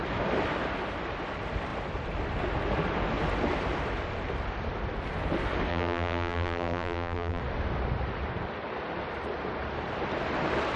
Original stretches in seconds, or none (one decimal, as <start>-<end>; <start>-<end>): 0.0-5.7; 7.4-10.8

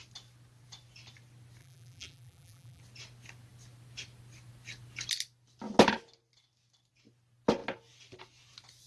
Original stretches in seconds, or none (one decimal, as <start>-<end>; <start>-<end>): 0.0-1.6; 2.8-8.9